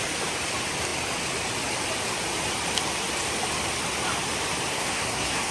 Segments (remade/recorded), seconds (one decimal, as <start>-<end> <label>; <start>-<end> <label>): 0.0-4.7 recorded; 4.7-5.5 remade